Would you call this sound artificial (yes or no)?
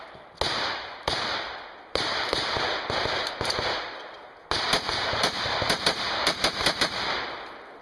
no